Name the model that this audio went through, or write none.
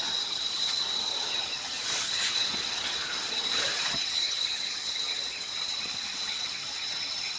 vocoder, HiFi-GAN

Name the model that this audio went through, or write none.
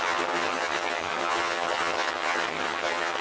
vocoder, HiFi-GAN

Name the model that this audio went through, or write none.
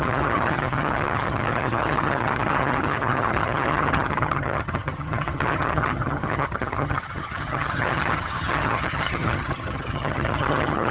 vocoder, HiFi-GAN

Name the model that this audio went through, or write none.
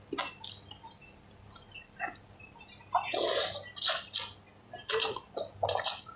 none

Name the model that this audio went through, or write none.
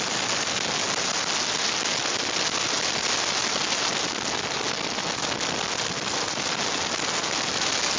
none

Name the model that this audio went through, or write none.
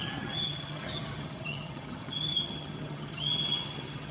vocoder, HiFi-GAN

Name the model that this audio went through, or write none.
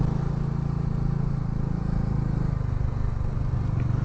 none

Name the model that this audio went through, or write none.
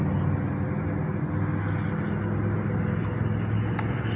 none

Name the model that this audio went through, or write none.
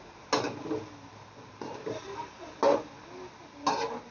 none